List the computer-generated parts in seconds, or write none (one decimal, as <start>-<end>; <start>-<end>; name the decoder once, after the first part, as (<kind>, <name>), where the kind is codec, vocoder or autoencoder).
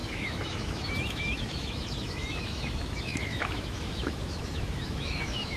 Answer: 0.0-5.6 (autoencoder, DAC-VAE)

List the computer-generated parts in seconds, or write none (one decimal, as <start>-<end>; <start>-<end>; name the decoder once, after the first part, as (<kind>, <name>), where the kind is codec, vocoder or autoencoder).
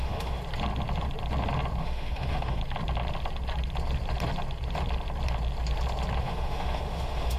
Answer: 0.0-0.4 (autoencoder, DAC-VAE); 1.8-2.6; 6.2-7.4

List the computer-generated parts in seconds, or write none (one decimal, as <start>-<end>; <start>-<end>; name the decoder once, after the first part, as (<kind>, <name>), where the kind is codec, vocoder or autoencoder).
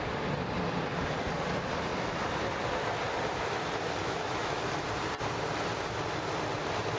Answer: 4.0-4.6 (autoencoder, DAC-VAE)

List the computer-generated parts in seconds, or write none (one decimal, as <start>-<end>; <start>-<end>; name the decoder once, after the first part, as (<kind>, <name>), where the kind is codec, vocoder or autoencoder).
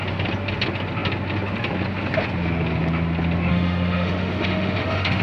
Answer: 3.5-5.2 (autoencoder, DAC-VAE)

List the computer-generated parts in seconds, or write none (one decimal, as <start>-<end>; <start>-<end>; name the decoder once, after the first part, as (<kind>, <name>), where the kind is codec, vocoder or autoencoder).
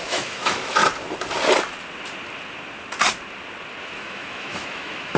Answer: 0.0-0.8 (autoencoder, DAC-VAE); 3.8-5.2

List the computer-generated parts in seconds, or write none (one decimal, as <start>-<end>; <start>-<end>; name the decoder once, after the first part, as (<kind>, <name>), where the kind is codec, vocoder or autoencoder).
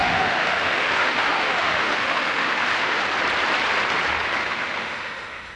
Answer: 0.0-3.0 (autoencoder, DAC-VAE); 4.4-5.6